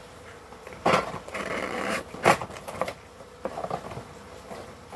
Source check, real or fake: real